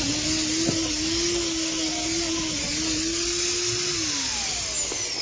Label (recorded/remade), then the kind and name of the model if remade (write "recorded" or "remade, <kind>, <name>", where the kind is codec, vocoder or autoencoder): recorded